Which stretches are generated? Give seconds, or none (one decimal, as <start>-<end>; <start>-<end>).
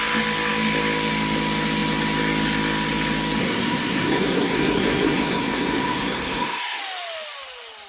3.4-6.8